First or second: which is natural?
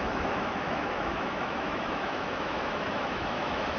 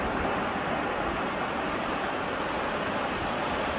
second